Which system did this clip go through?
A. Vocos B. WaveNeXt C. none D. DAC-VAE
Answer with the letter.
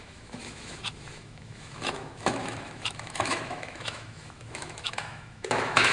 D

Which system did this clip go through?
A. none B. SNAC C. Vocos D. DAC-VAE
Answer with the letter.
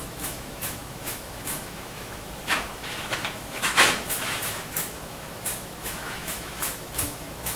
D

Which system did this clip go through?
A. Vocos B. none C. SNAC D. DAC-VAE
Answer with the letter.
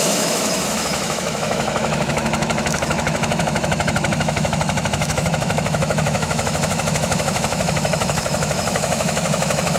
D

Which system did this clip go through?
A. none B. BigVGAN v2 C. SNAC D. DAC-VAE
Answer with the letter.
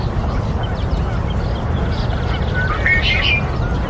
A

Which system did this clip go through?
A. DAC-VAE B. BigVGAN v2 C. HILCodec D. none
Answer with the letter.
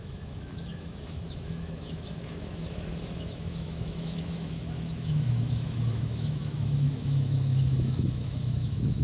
A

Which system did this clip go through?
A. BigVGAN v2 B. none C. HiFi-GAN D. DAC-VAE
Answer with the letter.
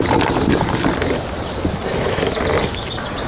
B